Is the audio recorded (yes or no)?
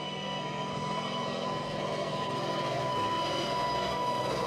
no